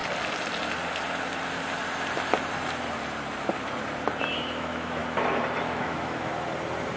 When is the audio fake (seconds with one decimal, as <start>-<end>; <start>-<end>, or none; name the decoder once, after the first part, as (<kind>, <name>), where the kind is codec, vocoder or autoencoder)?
4.2-5.0 (autoencoder, DAC-VAE); 5.6-6.3